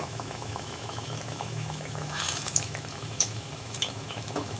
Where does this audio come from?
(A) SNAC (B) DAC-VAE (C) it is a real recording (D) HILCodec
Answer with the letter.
B